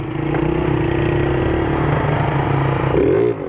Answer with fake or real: real